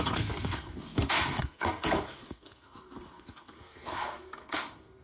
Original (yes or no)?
no